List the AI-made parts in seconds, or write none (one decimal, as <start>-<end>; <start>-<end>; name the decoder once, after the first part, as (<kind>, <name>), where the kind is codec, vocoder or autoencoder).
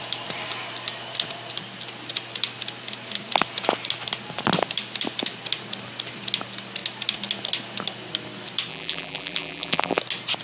8.7-10.0 (vocoder, BigVGAN v2)